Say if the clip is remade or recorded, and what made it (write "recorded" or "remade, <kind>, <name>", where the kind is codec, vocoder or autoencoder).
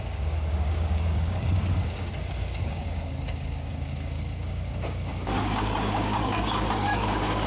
remade, codec, DAC